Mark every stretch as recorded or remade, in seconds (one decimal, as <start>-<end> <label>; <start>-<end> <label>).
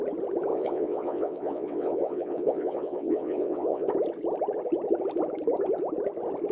0.0-0.5 recorded; 0.5-3.9 remade; 3.9-6.5 recorded